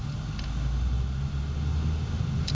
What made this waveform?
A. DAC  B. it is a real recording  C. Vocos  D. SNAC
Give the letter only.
B